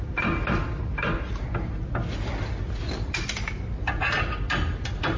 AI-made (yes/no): no